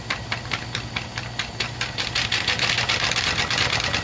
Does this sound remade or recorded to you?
recorded